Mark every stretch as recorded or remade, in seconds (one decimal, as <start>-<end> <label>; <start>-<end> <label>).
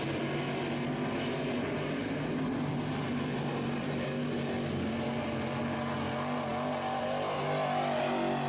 0.0-2.0 recorded; 2.0-3.9 remade; 3.9-8.5 recorded